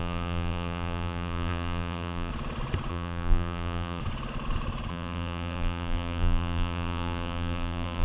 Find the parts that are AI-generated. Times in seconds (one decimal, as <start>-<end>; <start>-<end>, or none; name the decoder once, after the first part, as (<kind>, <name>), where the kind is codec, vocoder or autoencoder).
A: 0.0-2.3 (vocoder, BigVGAN v2); 2.9-4.0; 4.9-8.0

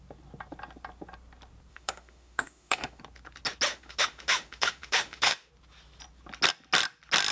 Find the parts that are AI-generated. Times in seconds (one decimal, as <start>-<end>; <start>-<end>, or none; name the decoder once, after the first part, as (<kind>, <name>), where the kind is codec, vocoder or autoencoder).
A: 1.7-3.0 (autoencoder, DAC-VAE); 3.7-5.5

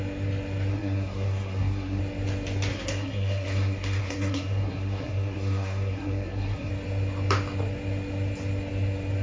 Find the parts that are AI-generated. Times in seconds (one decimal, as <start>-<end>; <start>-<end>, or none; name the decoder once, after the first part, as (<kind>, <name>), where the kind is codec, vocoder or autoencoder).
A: 0.7-2.0 (codec, SNAC); 2.7-6.7

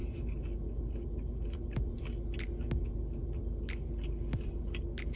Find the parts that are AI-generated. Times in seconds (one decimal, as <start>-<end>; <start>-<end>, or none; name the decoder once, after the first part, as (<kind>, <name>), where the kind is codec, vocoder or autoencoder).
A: none

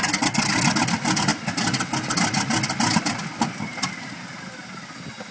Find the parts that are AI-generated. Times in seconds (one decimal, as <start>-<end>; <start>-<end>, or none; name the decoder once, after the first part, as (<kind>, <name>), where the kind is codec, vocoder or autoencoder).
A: none

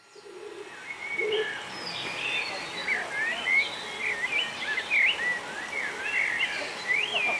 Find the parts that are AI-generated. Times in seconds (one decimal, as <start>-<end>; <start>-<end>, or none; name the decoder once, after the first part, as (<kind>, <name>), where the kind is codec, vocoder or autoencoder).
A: none

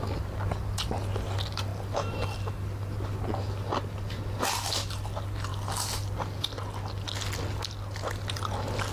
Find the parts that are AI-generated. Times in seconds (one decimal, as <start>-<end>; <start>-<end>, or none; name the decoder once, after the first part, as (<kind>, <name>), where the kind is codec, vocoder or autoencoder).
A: none